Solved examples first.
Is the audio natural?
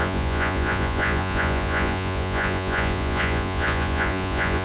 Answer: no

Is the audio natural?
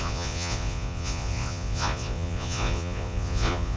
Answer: no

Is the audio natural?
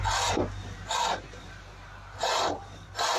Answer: yes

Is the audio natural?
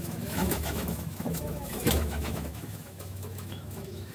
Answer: no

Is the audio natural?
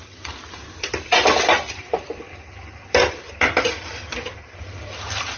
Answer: no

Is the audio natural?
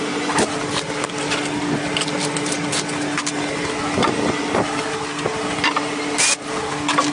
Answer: yes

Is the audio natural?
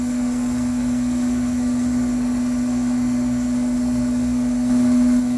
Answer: no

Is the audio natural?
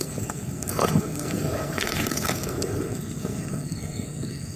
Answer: no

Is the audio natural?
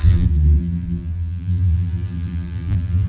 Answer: no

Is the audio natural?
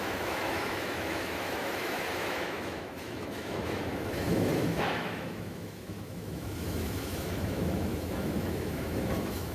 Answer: no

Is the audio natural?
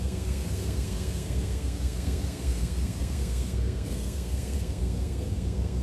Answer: no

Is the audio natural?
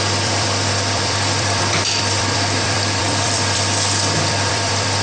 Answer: no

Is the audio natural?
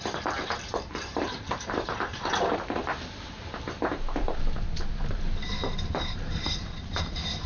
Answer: no